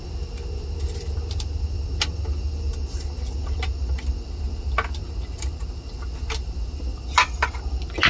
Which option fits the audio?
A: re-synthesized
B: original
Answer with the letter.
B